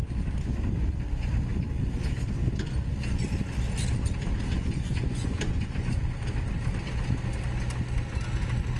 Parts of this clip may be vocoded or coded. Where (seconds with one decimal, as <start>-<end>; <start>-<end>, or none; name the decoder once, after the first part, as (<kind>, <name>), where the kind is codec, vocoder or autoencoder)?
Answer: 4.5-6.0 (vocoder, Vocos)